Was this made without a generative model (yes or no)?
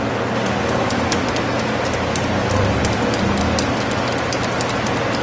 yes